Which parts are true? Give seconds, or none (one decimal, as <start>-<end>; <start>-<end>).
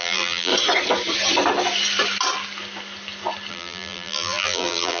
0.5-3.5